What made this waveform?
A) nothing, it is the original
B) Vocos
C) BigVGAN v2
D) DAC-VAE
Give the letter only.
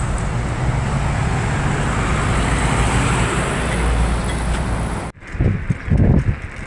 A